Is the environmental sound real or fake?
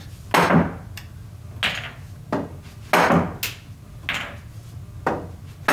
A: real